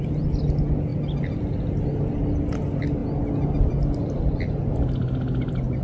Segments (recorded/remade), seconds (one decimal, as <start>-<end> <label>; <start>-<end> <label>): 0.0-5.8 recorded